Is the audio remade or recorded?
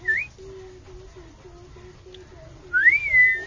recorded